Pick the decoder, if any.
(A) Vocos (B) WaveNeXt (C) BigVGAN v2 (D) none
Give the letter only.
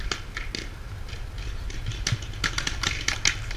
D